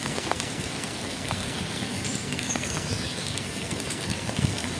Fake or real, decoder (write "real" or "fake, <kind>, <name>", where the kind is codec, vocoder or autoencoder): fake, codec, SNAC